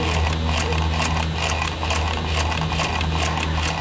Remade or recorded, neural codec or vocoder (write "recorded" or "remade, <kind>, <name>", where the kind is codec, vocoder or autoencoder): recorded